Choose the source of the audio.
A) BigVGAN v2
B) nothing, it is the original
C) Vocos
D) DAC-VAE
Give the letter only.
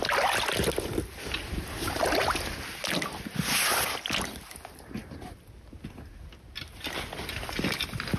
B